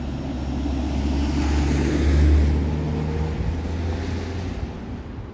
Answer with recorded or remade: recorded